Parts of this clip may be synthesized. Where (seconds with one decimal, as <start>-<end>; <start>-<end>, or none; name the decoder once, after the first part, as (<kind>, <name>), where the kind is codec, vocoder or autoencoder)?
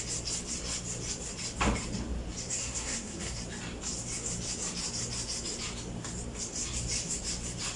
2.6-3.4 (codec, SNAC)